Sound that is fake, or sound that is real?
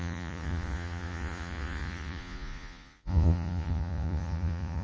fake